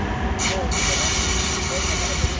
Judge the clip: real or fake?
real